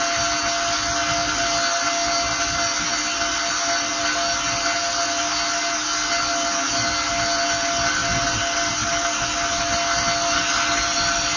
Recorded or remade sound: recorded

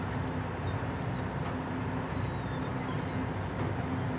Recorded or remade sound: recorded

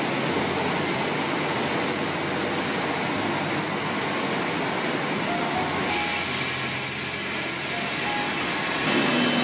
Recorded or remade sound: recorded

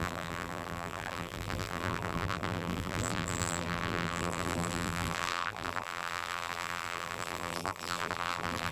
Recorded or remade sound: remade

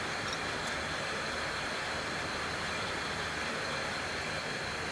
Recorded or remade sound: recorded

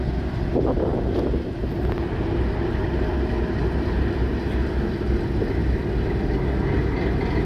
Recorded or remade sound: recorded